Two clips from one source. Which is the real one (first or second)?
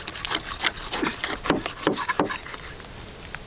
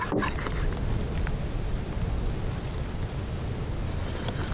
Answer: first